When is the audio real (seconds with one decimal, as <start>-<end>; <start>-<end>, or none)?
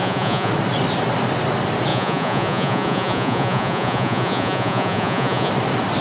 0.5-1.9; 5.5-6.0